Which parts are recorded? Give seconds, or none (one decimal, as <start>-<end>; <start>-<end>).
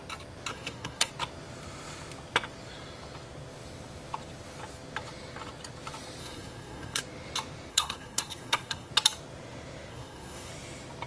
0.0-0.5; 1.1-6.2; 7.0-7.7; 8.9-9.9; 10.5-11.1